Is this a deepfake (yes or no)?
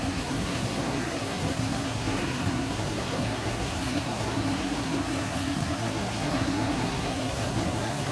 yes